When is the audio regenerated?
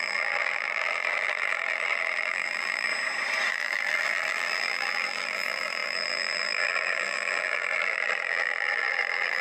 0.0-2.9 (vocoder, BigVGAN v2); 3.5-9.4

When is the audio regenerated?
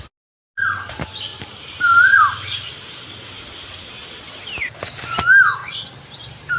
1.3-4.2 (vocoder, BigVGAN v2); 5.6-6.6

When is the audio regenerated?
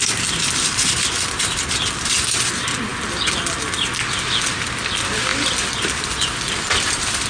0.0-2.9 (vocoder, BigVGAN v2); 4.5-5.3; 6.0-7.3